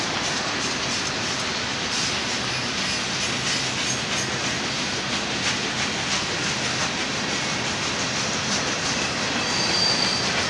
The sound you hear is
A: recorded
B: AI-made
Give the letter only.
A